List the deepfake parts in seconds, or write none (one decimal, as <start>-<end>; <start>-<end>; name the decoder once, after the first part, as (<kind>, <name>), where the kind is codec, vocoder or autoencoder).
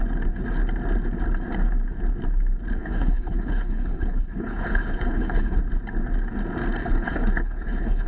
2.8-5.6 (codec, HILCodec); 6.8-8.1